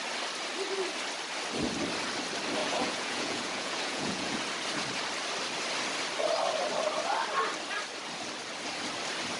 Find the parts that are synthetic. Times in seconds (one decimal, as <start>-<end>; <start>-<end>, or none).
2.6-4.4